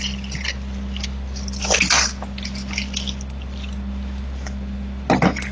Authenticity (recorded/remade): recorded